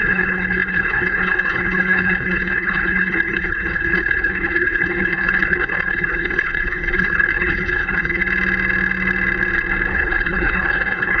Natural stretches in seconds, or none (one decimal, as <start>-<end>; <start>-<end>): 8.2-9.9